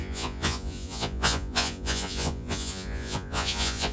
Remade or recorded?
remade